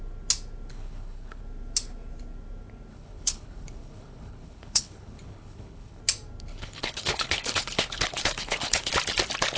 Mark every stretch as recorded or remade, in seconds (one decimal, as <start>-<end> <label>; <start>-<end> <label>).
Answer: 0.0-0.7 recorded; 0.7-1.4 remade; 1.4-2.9 recorded; 2.9-6.0 remade; 6.0-6.5 recorded; 6.5-8.9 remade; 8.9-9.6 recorded